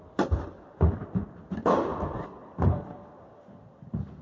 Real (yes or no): yes